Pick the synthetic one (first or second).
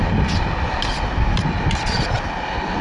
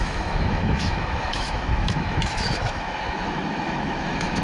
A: second